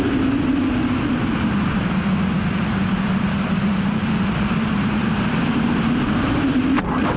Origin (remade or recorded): remade